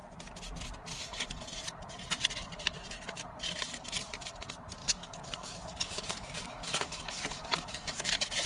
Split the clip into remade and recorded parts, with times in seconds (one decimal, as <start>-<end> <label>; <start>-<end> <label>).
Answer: 0.0-4.8 recorded; 4.8-8.1 remade; 8.1-8.5 recorded